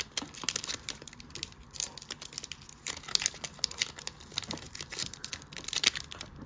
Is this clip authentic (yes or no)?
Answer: yes